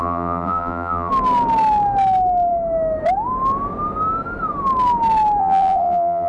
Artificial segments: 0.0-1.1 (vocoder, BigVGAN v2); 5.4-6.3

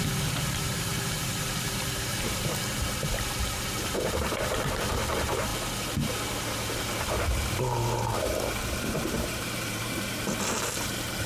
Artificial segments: 0.0-5.5 (vocoder, BigVGAN v2); 8.6-11.3

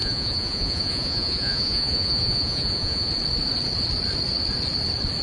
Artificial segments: 0.0-3.1 (vocoder, Vocos)

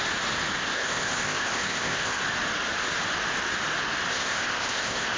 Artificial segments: 0.7-2.2 (codec, ZipCodec); 4.1-5.2